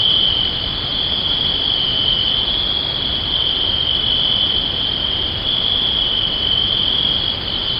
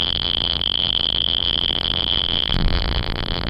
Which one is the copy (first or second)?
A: second